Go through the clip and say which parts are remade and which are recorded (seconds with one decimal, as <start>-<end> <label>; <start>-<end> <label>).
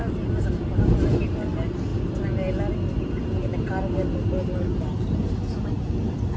0.0-6.4 recorded